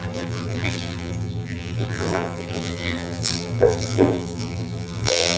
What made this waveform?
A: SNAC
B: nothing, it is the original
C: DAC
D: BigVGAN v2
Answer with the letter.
D